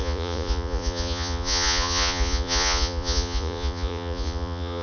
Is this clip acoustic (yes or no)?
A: no